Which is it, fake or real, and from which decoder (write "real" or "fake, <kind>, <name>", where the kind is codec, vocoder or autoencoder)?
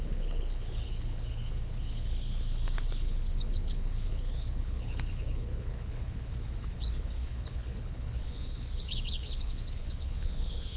fake, codec, HILCodec